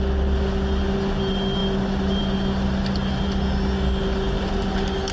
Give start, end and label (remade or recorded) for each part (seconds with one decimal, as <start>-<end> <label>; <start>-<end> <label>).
0.0-5.1 recorded